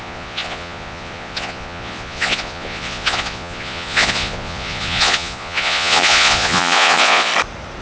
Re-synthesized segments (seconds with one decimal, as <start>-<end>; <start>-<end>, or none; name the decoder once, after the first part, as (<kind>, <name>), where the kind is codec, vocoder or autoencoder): 0.0-7.3 (vocoder, Vocos)